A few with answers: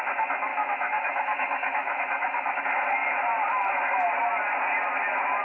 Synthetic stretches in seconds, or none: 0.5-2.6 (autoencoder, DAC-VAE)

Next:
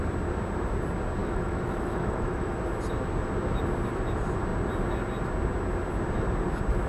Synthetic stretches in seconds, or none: 1.2-2.6 (autoencoder, DAC-VAE)